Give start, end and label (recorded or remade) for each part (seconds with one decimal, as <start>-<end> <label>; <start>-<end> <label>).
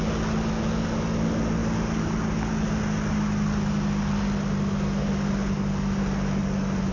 0.0-6.9 recorded